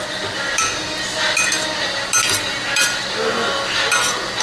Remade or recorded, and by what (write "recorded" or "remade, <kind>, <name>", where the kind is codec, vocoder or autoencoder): recorded